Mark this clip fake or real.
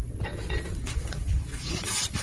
fake